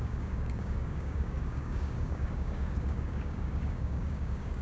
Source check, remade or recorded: remade